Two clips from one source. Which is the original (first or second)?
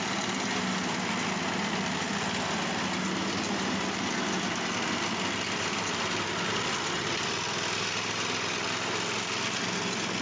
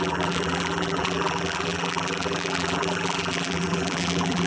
first